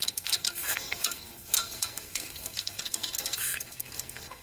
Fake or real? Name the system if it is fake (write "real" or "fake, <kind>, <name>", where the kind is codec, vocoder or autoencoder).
fake, codec, SNAC